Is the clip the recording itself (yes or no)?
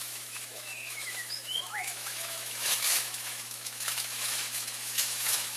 no